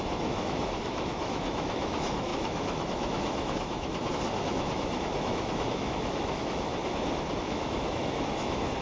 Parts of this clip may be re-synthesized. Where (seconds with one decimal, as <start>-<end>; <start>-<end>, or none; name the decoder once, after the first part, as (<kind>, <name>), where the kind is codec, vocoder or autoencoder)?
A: 0.0-6.7 (autoencoder, DAC-VAE); 7.4-8.8